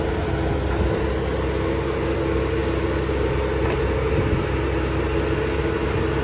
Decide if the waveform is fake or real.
real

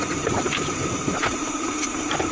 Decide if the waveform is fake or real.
fake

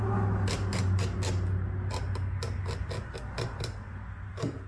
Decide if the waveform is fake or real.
real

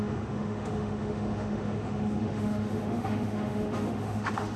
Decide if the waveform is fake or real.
fake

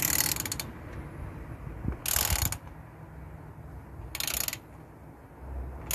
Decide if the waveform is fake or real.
real